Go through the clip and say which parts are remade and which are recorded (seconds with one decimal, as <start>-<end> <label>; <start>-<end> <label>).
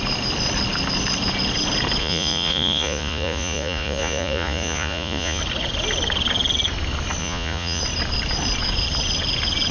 0.0-2.0 recorded; 2.0-5.4 remade; 5.4-7.2 recorded; 7.2-7.8 remade; 7.8-9.7 recorded